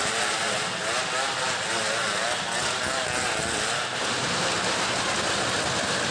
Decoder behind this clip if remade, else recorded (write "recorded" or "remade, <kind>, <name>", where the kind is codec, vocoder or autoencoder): recorded